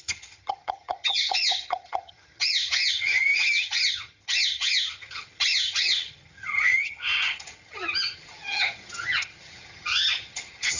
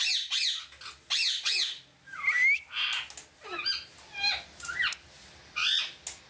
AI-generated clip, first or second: first